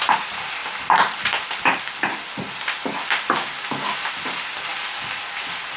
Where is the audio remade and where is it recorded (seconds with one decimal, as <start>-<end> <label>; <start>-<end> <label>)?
0.0-5.8 recorded

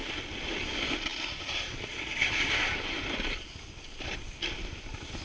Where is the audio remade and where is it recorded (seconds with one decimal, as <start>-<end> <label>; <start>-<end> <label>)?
0.0-5.2 recorded

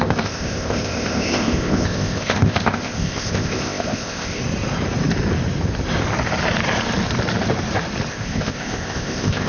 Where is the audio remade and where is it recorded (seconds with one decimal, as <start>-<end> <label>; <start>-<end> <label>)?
0.0-4.4 remade; 4.4-8.1 recorded; 8.1-9.5 remade